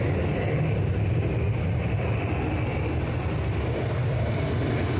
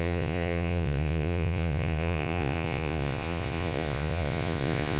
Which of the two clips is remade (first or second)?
second